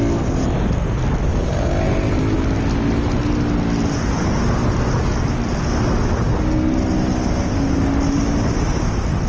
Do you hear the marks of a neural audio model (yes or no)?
no